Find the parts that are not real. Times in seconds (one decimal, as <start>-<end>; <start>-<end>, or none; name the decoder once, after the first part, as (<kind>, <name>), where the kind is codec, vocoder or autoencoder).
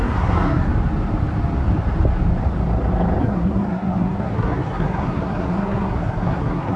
0.0-0.7 (codec, SNAC); 3.2-6.8